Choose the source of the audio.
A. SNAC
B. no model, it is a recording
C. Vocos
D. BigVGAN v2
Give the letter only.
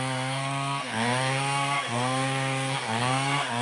A